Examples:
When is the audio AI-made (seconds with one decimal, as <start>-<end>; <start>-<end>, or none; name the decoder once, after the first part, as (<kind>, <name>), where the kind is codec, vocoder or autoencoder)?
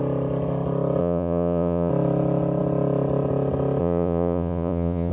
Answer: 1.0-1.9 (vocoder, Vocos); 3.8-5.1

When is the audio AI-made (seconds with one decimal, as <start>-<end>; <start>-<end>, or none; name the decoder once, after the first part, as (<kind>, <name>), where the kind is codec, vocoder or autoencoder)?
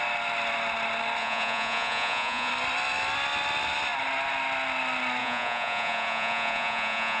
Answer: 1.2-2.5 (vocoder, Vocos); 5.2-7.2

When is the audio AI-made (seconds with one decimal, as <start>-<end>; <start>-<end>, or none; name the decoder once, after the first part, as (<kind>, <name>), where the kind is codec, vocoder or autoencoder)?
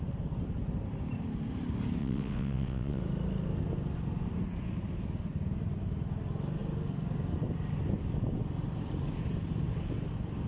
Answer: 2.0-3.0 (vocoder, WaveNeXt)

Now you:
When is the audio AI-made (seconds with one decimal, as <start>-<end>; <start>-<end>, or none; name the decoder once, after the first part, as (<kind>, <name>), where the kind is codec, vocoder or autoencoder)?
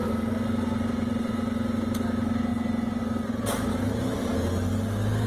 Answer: 0.0-1.3 (vocoder, BigVGAN v2); 2.5-3.0; 3.7-4.3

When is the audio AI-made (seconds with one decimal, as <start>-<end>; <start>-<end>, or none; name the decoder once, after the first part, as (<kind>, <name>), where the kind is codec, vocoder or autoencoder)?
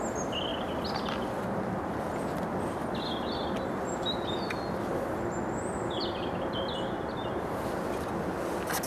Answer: none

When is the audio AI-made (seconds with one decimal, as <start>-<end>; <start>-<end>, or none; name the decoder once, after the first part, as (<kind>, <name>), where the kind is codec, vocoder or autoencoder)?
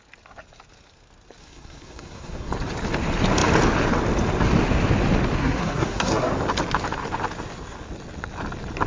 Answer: 1.4-2.5 (codec, SNAC); 5.4-6.3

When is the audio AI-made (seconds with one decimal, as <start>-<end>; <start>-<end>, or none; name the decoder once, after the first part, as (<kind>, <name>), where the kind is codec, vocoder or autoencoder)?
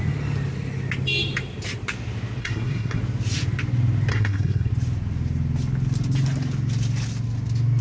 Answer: 2.4-3.0 (codec, SNAC); 4.1-4.7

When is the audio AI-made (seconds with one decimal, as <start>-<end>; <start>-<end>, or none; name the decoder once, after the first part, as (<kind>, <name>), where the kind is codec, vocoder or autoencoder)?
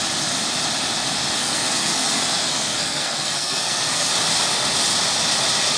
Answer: 1.4-4.1 (codec, SNAC)